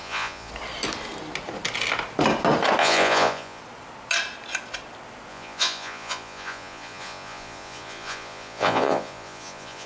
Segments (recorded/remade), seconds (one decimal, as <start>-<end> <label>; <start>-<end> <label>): 0.0-0.5 remade; 0.5-2.8 recorded; 2.8-3.6 remade; 3.6-5.3 recorded; 5.3-9.9 remade